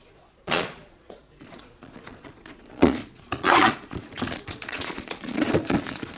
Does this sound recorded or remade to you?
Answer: remade